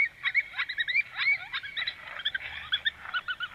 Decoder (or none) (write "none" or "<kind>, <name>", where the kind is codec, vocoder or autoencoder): vocoder, BigVGAN v2